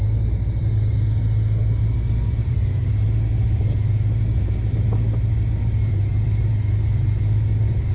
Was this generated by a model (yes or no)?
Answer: no